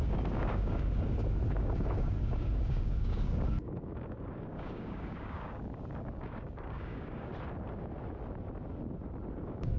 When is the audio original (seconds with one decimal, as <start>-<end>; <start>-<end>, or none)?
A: 7.3-9.4